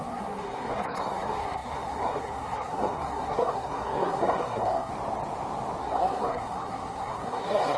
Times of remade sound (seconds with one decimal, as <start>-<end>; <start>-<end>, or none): 0.0-4.9; 5.8-7.8